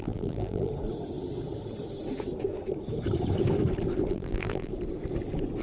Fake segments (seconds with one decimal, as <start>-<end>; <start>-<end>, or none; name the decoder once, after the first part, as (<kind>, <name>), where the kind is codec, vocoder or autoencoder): 0.0-0.7 (vocoder, BigVGAN v2); 4.1-4.7